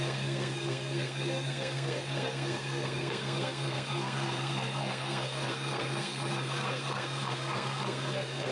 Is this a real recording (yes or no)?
no